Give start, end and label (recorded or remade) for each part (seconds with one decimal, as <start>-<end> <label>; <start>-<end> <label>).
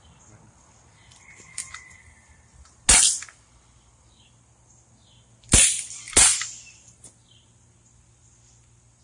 0.0-9.0 recorded